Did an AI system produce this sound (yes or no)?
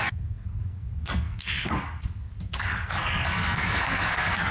yes